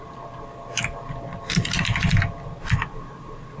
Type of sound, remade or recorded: recorded